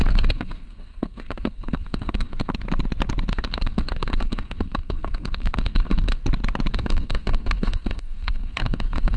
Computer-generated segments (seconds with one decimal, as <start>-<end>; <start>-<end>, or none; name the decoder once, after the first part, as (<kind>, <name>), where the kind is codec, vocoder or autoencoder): 0.0-2.5 (codec, SNAC); 3.3-6.2; 6.7-9.2